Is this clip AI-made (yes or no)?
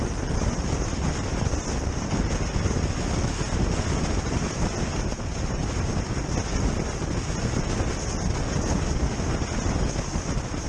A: no